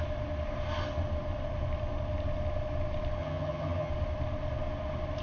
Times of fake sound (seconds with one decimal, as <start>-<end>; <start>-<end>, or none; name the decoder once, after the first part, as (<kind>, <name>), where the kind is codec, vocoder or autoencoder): 3.2-3.9 (vocoder, HiFi-GAN)